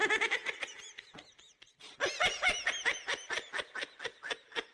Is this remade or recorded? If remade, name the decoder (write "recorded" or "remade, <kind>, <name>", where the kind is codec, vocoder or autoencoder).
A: recorded